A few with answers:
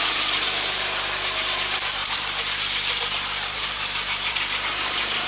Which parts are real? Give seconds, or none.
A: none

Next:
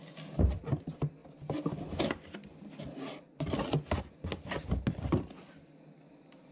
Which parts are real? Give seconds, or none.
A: 0.0-6.5

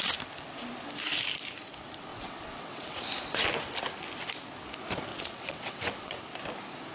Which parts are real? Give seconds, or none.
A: 0.0-2.1; 3.0-5.1; 6.2-6.9